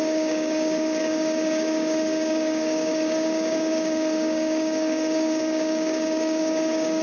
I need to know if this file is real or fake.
fake